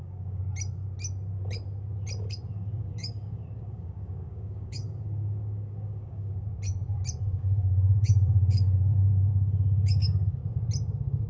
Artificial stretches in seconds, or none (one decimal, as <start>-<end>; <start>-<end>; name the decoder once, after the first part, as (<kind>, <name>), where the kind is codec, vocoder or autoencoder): 0.0-0.4 (codec, DAC); 2.5-6.5; 7.4-10.4